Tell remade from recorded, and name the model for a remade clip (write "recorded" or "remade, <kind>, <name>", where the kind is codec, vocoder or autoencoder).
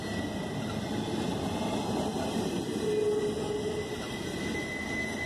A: recorded